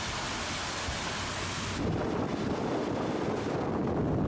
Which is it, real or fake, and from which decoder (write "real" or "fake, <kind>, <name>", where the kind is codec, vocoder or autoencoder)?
real